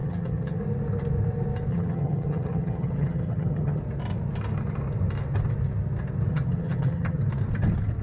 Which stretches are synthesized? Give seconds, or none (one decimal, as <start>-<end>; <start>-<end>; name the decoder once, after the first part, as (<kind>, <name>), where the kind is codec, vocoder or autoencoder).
0.0-0.6 (vocoder, HiFi-GAN); 1.7-3.8; 6.3-7.2